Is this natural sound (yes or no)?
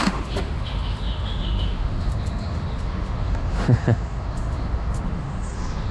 no